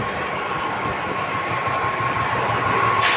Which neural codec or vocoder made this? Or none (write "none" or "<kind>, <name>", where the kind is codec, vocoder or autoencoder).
vocoder, BigVGAN v2